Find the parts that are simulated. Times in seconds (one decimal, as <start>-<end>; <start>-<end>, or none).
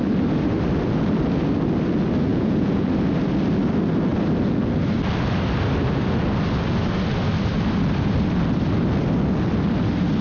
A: 2.3-2.9